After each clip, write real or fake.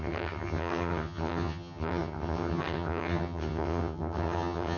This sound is fake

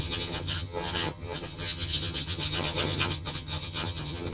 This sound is fake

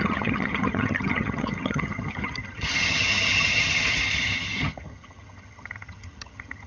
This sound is fake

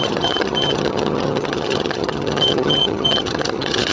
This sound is fake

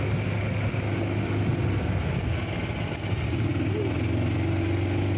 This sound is real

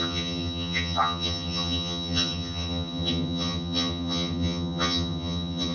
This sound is fake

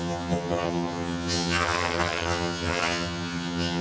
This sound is fake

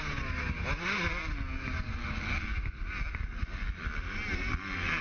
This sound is real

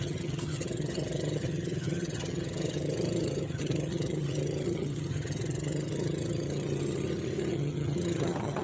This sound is fake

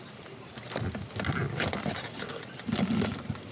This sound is real